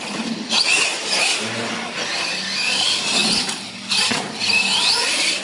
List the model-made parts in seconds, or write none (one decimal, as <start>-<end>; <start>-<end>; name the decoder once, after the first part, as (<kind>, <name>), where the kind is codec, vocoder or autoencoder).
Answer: none